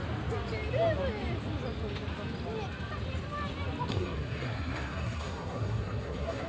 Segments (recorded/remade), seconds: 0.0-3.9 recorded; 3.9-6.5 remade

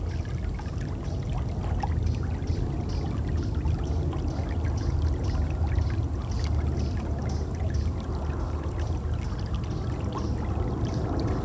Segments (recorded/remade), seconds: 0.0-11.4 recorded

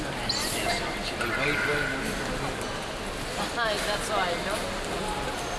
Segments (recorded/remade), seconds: 0.0-5.6 recorded